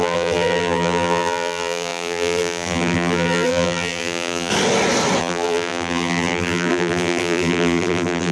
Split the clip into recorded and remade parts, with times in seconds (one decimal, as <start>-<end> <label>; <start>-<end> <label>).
0.0-4.5 remade; 4.5-5.2 recorded; 5.2-8.3 remade